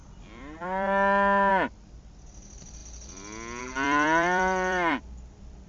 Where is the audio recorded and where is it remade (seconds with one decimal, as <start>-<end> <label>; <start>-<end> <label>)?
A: 0.0-2.8 remade; 2.8-3.6 recorded; 3.6-5.7 remade